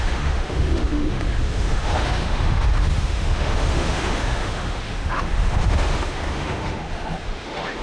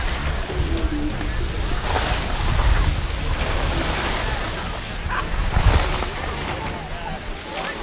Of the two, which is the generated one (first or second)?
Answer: first